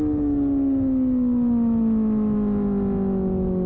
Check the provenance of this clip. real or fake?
real